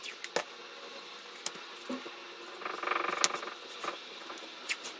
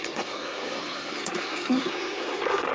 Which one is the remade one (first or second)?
second